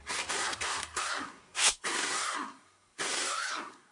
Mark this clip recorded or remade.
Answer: remade